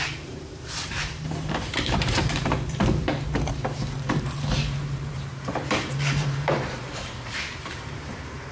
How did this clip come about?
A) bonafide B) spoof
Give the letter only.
B